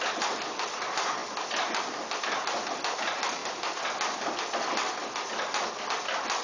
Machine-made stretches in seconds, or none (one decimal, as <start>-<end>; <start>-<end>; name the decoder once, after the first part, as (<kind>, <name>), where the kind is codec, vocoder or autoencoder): none